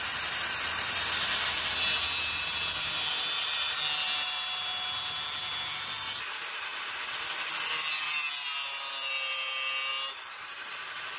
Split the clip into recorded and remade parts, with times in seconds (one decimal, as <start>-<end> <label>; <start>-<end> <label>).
0.0-11.2 recorded